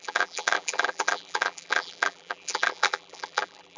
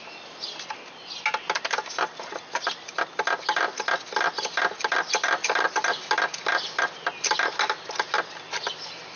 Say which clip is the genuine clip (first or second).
second